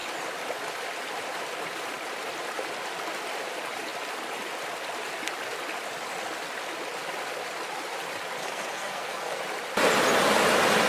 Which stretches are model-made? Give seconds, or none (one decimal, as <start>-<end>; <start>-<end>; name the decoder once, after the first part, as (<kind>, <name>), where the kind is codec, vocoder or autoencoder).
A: 8.4-9.4 (codec, SNAC)